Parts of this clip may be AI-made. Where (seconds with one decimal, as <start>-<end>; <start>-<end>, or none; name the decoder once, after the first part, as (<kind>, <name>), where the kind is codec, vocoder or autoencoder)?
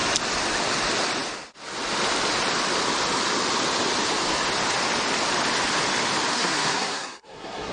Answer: 6.3-7.7 (codec, SNAC)